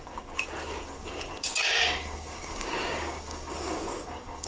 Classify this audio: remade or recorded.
remade